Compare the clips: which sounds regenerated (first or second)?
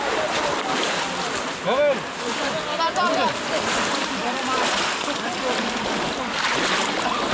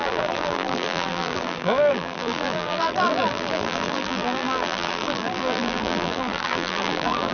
second